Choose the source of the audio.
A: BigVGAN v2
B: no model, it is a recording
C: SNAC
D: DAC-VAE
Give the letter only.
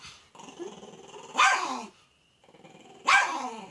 B